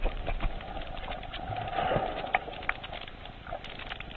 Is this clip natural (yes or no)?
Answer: no